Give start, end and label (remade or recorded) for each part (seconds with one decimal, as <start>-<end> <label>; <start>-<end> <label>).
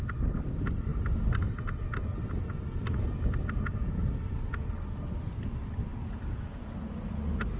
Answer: 0.0-5.9 recorded; 5.9-6.8 remade; 6.8-7.6 recorded